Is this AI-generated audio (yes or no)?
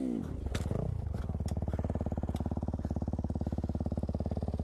no